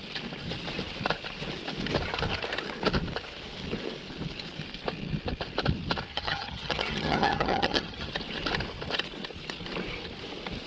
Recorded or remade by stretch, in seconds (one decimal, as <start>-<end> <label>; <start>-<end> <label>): 0.0-6.1 recorded; 6.1-8.1 remade; 8.1-10.7 recorded